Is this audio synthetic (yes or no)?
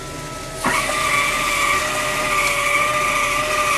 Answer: no